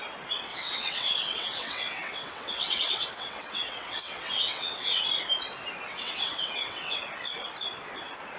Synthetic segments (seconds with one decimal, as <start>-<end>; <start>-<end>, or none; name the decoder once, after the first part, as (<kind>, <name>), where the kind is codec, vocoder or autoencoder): 0.5-5.0 (vocoder, WaveNeXt); 5.9-7.0